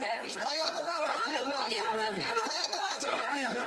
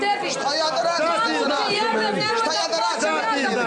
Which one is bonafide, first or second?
second